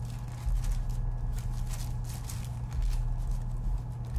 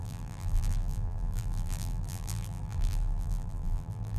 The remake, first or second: second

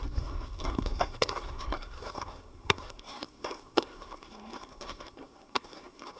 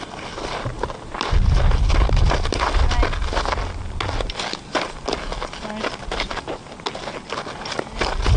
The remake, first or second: first